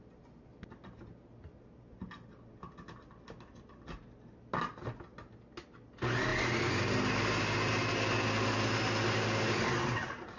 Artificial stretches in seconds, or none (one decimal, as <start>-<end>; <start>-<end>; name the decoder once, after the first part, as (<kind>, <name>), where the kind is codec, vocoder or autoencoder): none